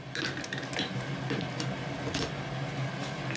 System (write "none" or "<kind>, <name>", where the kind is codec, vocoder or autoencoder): none